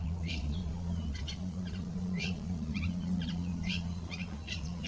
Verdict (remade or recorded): remade